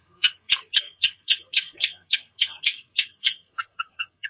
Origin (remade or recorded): remade